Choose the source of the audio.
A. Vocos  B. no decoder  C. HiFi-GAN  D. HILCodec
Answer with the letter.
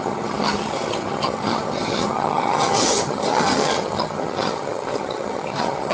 C